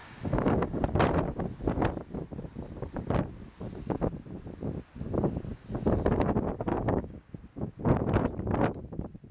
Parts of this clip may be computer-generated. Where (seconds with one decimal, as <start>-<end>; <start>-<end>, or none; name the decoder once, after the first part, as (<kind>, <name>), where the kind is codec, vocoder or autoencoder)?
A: 0.0-0.8 (codec, DAC); 6.7-7.3